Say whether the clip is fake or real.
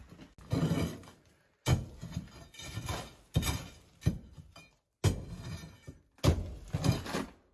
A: real